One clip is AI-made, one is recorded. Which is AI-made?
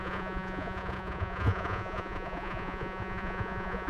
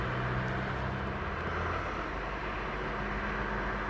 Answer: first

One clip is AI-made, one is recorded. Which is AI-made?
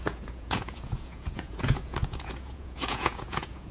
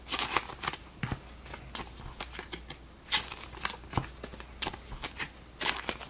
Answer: first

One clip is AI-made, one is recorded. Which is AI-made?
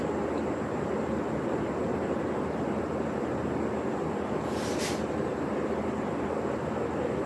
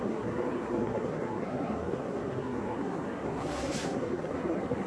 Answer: second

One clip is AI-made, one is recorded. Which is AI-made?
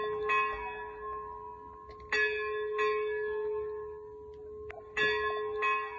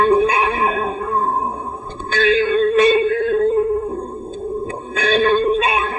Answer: second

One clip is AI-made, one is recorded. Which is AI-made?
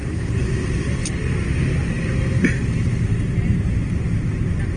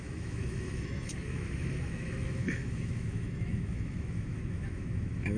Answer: second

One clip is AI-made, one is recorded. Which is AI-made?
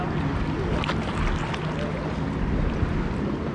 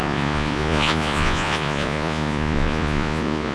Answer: second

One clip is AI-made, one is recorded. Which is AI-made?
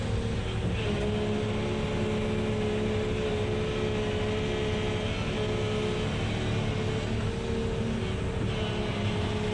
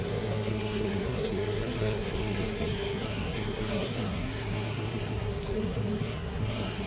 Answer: second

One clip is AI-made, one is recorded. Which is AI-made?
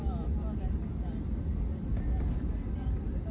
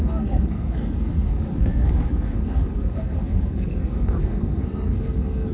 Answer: second